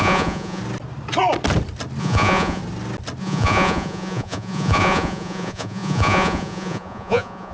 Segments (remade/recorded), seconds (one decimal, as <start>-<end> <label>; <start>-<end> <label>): 0.0-0.6 remade; 0.6-2.0 recorded; 2.0-2.6 remade; 2.6-3.2 recorded; 3.2-7.5 remade

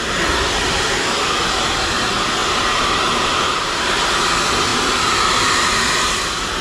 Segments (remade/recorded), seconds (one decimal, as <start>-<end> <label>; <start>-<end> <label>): 0.0-2.4 recorded; 2.4-3.9 remade; 3.9-4.7 recorded; 4.7-5.6 remade; 5.6-6.6 recorded

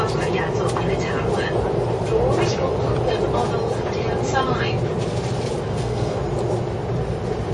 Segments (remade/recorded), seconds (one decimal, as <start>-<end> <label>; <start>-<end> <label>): 0.0-5.7 recorded; 5.7-6.2 remade; 6.2-7.5 recorded

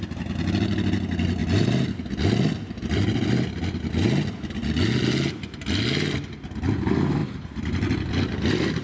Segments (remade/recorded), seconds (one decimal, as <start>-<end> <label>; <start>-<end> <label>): 0.0-1.4 recorded; 1.4-3.5 remade; 3.5-8.8 recorded

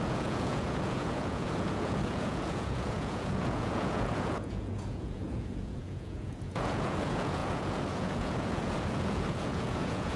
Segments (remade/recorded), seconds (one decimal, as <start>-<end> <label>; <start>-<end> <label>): 0.0-10.2 remade

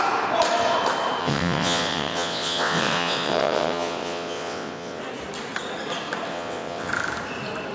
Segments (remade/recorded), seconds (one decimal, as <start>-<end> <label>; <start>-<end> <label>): 0.0-1.2 recorded; 1.2-5.0 remade; 5.0-6.3 recorded; 6.3-6.9 remade; 6.9-7.7 recorded